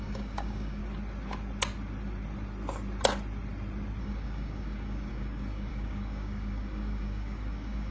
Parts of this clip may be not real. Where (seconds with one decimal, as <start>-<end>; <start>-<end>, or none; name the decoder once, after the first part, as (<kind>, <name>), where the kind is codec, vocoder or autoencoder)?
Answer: 0.0-0.8 (codec, DAC); 4.0-7.9